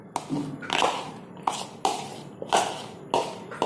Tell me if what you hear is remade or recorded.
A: recorded